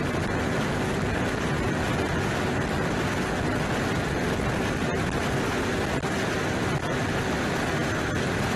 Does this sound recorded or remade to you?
recorded